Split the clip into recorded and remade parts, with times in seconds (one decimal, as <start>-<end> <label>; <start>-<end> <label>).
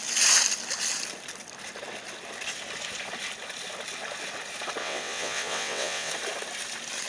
0.0-4.8 recorded; 4.8-6.1 remade; 6.1-7.1 recorded